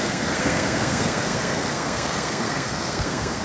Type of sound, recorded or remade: remade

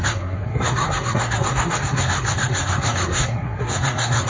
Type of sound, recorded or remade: remade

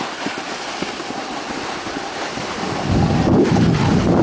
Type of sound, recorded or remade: recorded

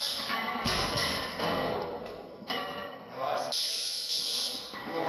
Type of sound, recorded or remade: remade